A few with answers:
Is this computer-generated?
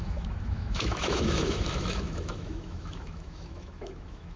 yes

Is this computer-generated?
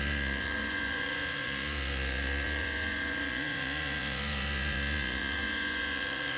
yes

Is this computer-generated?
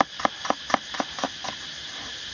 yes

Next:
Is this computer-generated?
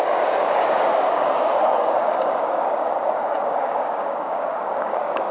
yes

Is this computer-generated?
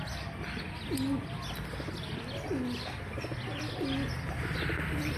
no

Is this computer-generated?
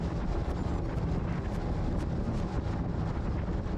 no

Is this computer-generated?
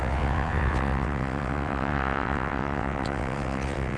yes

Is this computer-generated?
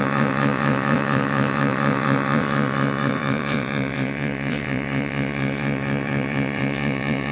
yes